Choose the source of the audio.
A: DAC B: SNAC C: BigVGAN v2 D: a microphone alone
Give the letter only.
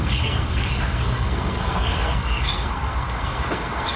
B